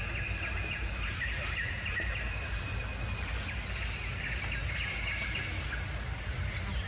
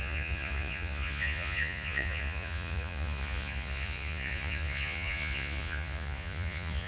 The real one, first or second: first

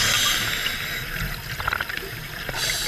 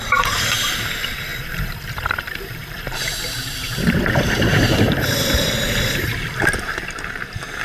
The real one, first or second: first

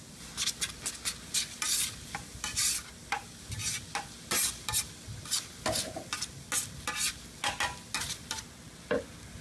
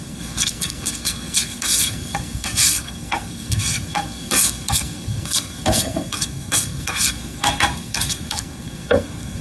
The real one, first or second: first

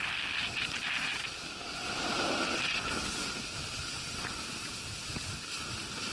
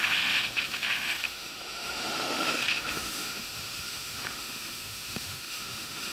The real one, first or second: first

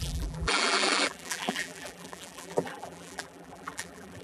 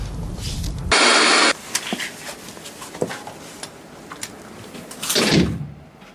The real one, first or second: second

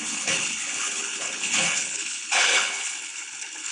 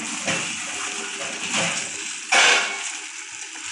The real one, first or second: second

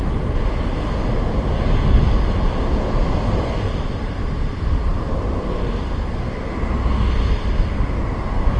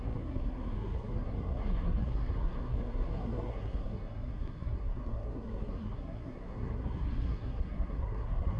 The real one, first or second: first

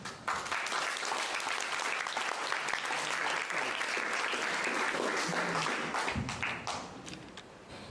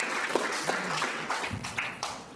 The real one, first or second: first